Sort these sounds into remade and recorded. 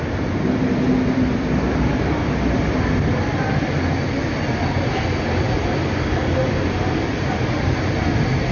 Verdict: recorded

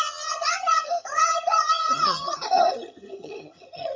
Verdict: remade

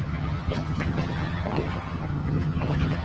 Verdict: remade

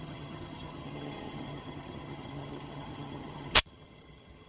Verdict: remade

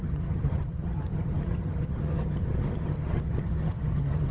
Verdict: remade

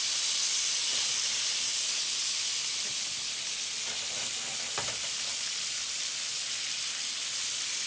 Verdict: recorded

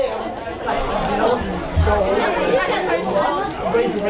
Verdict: recorded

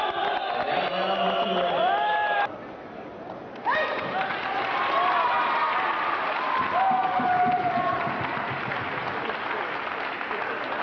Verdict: recorded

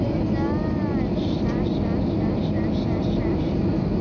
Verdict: recorded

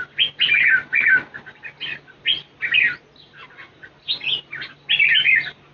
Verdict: recorded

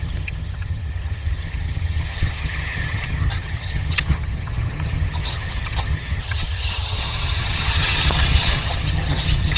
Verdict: remade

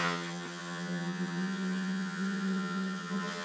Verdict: remade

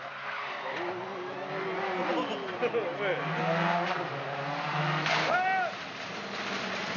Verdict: recorded